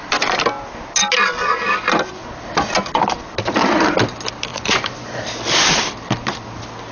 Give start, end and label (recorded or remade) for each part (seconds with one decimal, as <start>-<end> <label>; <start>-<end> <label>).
0.0-4.5 recorded; 4.5-5.2 remade; 5.2-6.9 recorded